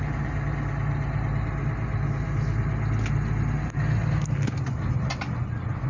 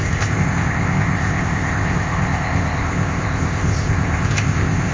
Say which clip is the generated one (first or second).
second